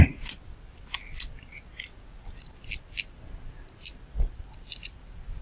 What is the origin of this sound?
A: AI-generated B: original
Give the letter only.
B